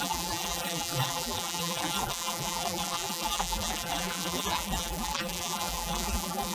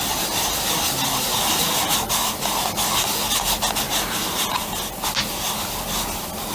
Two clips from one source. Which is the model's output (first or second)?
first